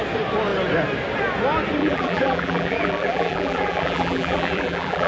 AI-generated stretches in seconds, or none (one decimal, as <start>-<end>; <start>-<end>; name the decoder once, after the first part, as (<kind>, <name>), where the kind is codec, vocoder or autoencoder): 1.8-5.1 (vocoder, BigVGAN v2)